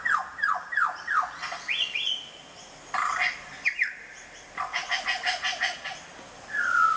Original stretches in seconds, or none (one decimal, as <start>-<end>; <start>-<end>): 0.0-7.0